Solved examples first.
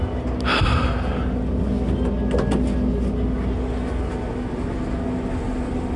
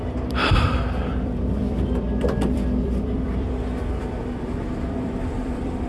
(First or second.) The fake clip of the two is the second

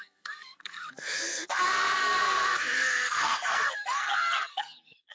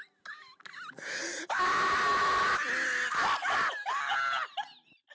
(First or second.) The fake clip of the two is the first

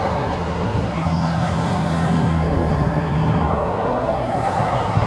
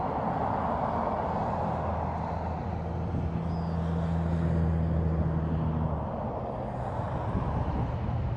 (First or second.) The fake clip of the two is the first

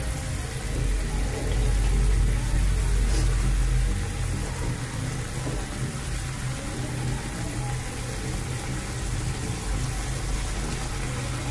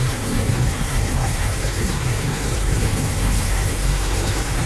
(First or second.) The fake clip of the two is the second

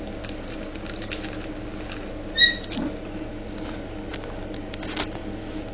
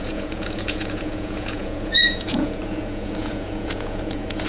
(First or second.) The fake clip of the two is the second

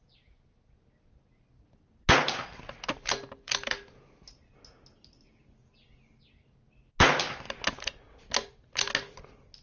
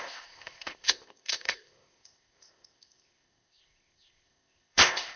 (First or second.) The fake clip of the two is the second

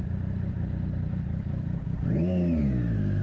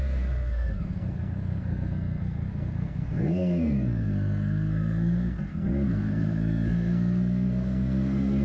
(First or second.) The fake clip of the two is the second